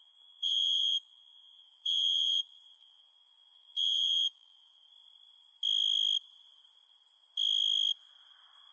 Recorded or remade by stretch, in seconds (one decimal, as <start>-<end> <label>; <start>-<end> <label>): 0.0-4.8 remade; 4.8-8.7 recorded